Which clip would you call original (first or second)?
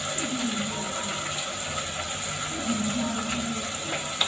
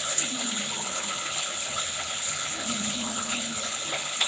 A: first